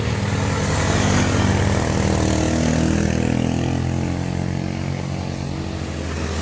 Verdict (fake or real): real